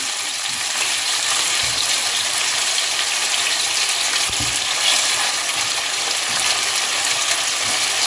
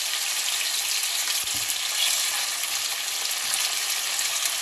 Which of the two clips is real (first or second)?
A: second